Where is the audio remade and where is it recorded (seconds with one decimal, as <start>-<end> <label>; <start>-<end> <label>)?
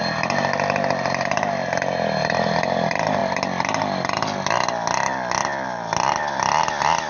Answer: 0.0-7.1 recorded